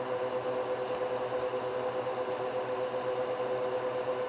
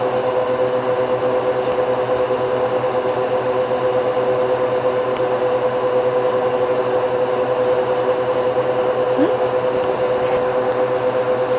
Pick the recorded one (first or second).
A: second